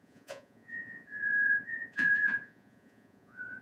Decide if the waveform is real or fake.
fake